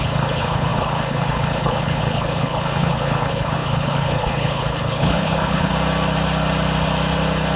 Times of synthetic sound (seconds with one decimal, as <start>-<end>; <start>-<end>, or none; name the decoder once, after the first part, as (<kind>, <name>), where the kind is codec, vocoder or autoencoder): 0.0-5.7 (codec, HILCodec)